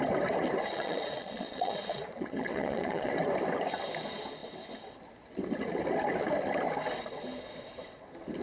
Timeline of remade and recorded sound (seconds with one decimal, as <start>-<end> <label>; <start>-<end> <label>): 0.0-0.7 recorded; 0.7-3.1 remade; 3.1-8.4 recorded